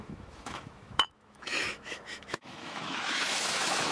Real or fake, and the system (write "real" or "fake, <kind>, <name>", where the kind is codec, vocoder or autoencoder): fake, autoencoder, DAC-VAE